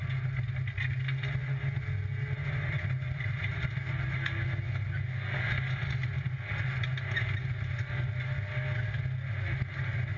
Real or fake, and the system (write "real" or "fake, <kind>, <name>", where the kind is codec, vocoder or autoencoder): real